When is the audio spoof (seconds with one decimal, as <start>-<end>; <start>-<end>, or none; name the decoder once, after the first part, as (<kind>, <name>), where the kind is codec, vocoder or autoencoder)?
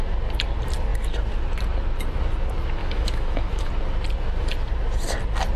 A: 2.8-3.7 (autoencoder, DAC-VAE)